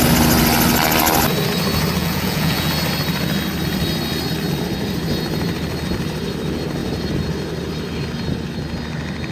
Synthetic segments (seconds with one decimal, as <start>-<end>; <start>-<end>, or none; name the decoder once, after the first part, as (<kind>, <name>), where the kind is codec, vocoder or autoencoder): 2.0-2.7 (vocoder, Vocos)